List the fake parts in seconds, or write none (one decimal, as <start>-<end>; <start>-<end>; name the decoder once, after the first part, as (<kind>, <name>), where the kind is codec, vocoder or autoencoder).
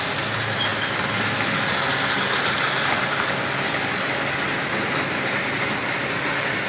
none